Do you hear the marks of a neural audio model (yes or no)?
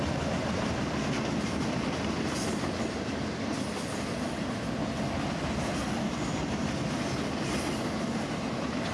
no